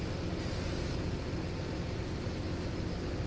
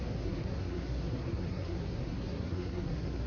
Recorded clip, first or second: first